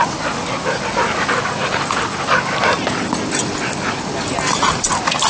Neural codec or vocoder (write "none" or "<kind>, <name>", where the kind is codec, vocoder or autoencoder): none